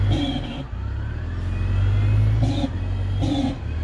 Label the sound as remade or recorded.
recorded